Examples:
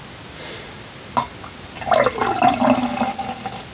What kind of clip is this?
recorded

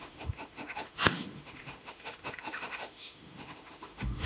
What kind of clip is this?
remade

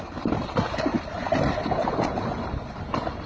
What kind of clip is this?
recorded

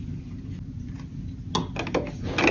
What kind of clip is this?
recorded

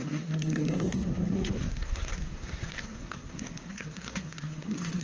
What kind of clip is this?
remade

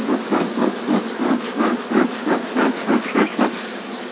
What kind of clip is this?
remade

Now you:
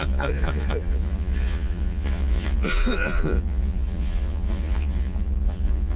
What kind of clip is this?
remade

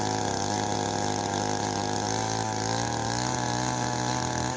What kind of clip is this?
recorded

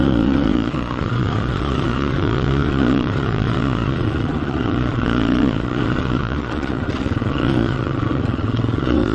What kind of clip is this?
remade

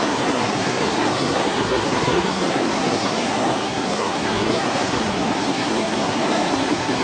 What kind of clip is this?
remade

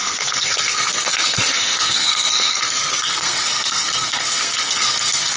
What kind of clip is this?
remade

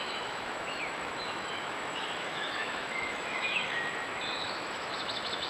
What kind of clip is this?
remade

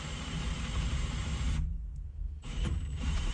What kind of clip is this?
remade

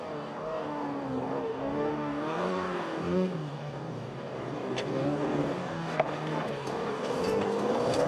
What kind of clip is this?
remade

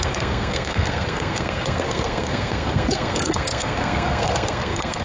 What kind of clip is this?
remade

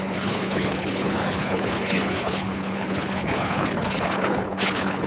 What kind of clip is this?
remade